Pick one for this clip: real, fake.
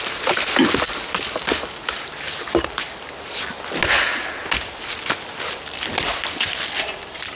real